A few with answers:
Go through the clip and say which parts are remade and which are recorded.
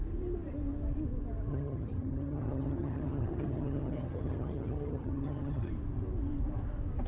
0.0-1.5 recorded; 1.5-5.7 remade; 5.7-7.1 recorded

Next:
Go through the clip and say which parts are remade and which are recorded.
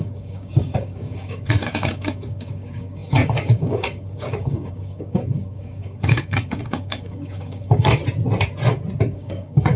0.0-8.0 remade; 8.0-9.0 recorded; 9.0-9.8 remade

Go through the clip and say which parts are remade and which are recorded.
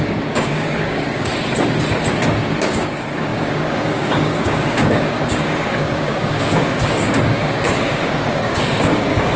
0.0-1.3 remade; 1.3-2.6 recorded; 2.6-9.4 remade